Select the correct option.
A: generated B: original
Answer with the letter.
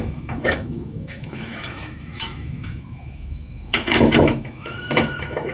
A